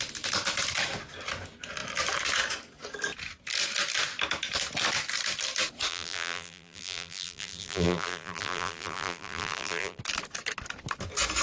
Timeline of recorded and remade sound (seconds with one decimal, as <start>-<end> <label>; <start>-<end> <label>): 0.0-5.9 recorded; 5.9-10.0 remade; 10.0-11.4 recorded